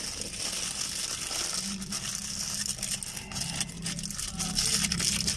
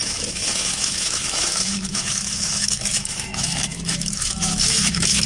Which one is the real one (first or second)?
first